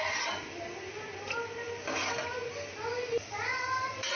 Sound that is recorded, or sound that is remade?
recorded